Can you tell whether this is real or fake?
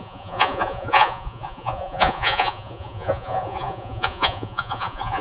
fake